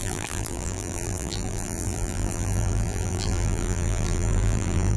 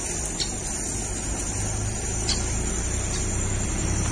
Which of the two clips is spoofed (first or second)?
first